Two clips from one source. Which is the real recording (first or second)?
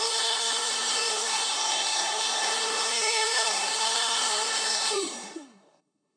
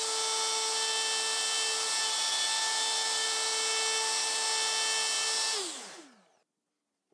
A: second